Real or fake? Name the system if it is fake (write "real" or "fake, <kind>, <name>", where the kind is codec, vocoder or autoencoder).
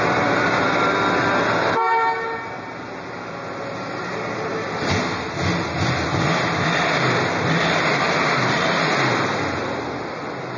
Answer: real